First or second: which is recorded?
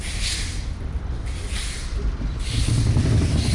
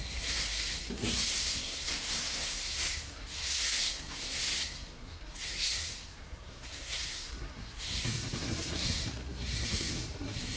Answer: first